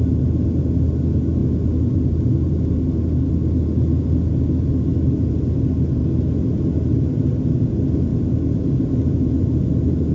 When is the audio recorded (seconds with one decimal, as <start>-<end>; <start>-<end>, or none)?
0.0-10.1